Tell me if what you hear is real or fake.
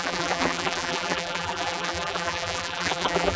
fake